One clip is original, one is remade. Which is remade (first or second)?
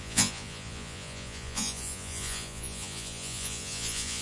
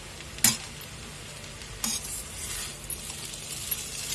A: first